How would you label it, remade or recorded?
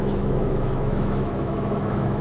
remade